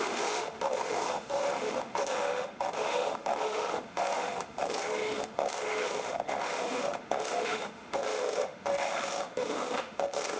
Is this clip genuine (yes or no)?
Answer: no